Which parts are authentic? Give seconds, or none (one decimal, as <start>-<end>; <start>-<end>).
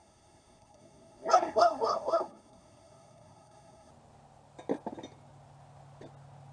3.9-6.5